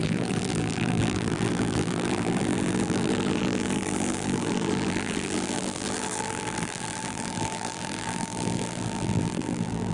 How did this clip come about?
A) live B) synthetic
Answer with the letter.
B